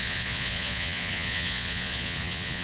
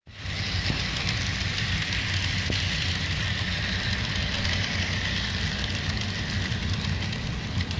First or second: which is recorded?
second